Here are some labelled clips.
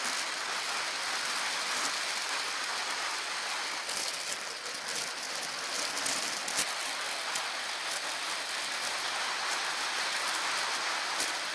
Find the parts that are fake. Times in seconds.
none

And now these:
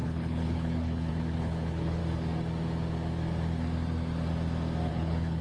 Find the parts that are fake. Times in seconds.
0.0-2.0 (codec, HILCodec); 4.9-5.4

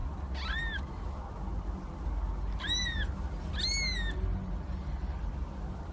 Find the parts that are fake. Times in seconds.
none

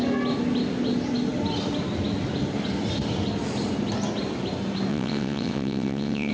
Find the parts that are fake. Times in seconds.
4.9-6.3 (vocoder, WaveNeXt)

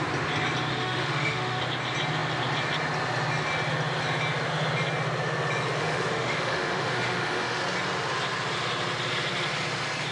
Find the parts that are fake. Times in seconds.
0.7-1.6 (autoencoder, DAC-VAE); 5.8-7.6

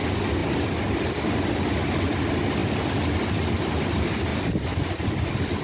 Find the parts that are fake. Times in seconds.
none

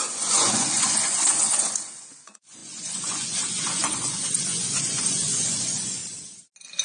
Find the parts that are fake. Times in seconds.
0.0-6.0 (vocoder, Vocos)

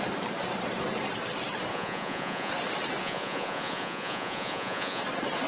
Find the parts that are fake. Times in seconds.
1.7-2.5 (vocoder, Vocos); 3.0-5.0